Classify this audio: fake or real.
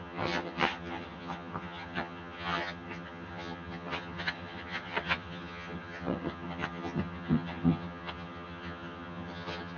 fake